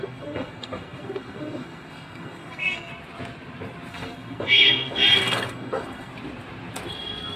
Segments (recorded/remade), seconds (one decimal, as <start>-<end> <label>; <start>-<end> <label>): 0.0-2.9 remade; 2.9-3.9 recorded; 3.9-6.1 remade; 6.1-6.9 recorded; 6.9-7.4 remade